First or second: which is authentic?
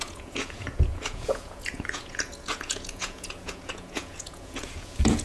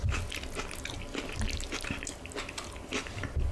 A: second